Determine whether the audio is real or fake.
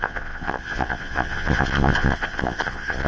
fake